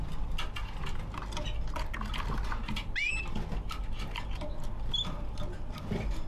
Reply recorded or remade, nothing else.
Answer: recorded